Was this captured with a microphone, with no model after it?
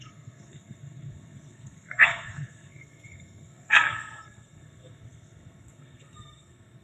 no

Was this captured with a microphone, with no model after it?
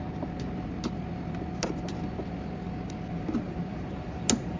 yes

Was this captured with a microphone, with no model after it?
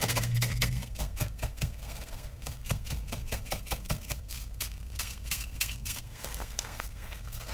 no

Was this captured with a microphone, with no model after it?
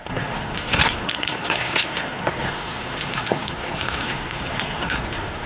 no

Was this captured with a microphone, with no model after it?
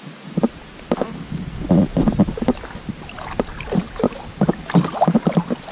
yes